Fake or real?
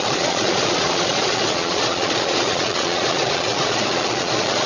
fake